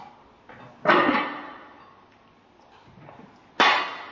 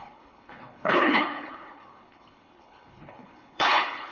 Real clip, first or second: first